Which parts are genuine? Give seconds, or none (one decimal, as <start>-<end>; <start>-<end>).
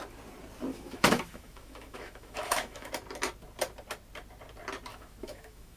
0.0-0.7; 2.9-4.9